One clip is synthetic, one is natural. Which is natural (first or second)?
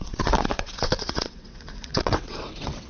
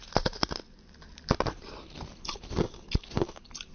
second